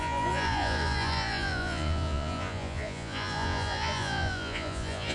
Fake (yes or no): yes